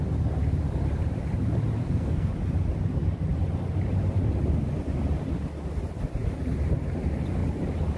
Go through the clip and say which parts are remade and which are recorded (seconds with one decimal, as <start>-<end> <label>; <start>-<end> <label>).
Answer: 0.0-1.8 recorded; 1.8-2.3 remade; 2.3-8.0 recorded